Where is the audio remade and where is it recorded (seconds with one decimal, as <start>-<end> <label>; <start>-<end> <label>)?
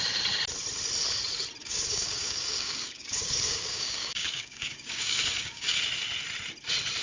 0.0-1.6 recorded; 1.6-5.8 remade; 5.8-7.0 recorded